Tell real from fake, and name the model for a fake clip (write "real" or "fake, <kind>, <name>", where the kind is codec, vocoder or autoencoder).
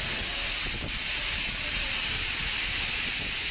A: real